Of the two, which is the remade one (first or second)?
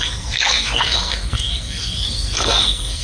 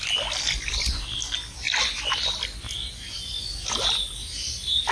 first